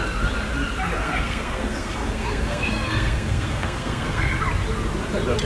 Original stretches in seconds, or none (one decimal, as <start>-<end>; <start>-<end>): 0.0-1.0; 4.3-5.5